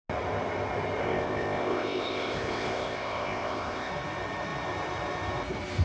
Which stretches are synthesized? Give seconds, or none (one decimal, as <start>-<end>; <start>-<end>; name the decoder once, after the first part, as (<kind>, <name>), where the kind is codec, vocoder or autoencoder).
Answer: 1.0-3.9 (codec, ZipCodec)